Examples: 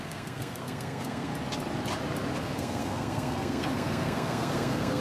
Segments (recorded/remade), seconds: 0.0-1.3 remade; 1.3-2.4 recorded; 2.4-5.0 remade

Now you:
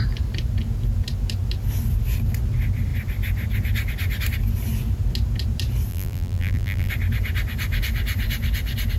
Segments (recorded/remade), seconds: 0.0-5.9 recorded; 5.9-6.9 remade; 6.9-9.0 recorded